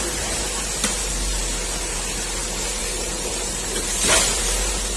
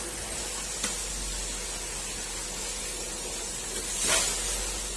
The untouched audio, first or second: second